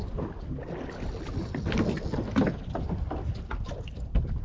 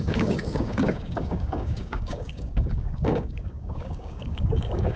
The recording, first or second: first